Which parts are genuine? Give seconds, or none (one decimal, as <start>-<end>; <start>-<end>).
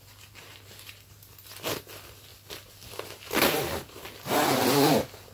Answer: 0.0-2.3; 4.0-5.3